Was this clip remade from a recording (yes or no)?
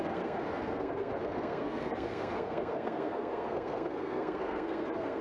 yes